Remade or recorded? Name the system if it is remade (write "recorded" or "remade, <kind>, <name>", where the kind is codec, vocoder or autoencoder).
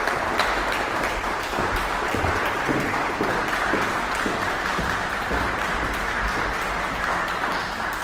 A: recorded